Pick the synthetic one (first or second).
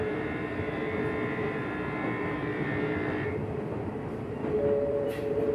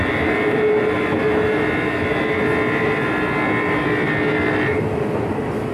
first